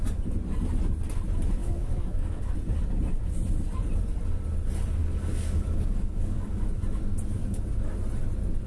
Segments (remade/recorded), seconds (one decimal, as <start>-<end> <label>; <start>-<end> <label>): 0.0-1.6 recorded; 1.6-2.4 remade; 2.4-5.0 recorded; 5.0-6.7 remade; 6.7-7.3 recorded; 7.3-7.9 remade; 7.9-8.7 recorded